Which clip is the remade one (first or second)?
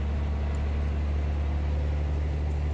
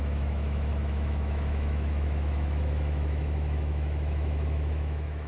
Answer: second